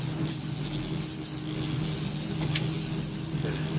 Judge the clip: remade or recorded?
recorded